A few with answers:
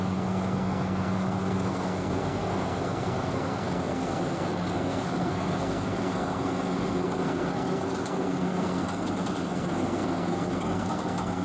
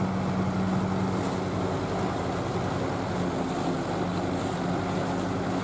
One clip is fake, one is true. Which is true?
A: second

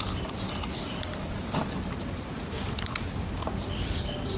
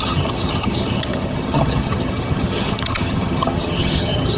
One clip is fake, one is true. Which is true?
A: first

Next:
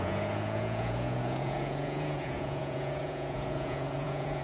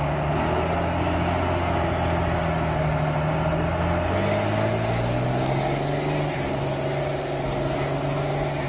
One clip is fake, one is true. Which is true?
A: second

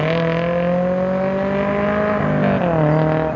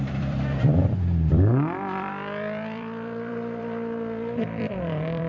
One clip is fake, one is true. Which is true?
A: first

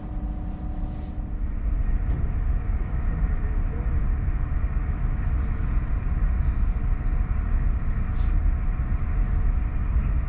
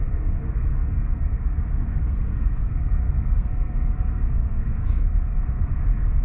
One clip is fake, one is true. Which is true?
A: first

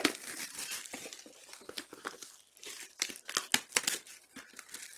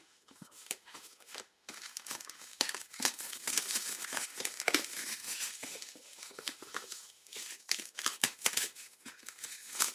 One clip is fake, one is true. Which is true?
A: first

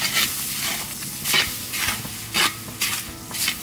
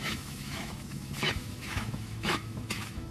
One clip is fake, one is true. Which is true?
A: first